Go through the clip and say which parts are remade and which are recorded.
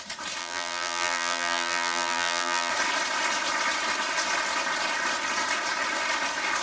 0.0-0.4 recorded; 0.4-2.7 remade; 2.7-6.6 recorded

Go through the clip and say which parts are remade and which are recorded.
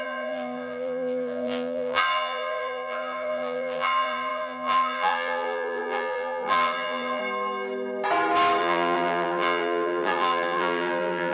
0.0-7.2 remade; 7.2-8.6 recorded; 8.6-11.3 remade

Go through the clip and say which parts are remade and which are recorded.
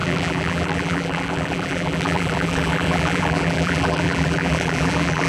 0.0-5.3 remade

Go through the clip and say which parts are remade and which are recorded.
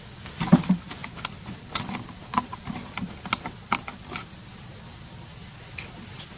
0.0-1.0 remade; 1.0-1.6 recorded; 1.6-6.4 remade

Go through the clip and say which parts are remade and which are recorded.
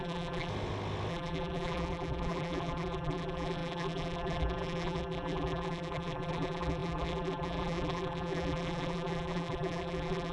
0.0-0.5 remade; 0.5-1.1 recorded; 1.1-10.3 remade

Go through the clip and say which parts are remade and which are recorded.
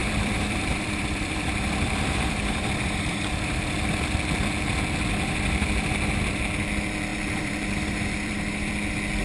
0.0-3.6 remade; 3.6-7.1 recorded; 7.1-8.7 remade; 8.7-9.2 recorded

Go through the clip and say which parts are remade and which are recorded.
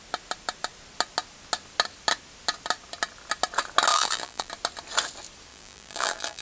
0.0-3.9 recorded; 3.9-4.5 remade; 4.5-5.5 recorded; 5.5-6.4 remade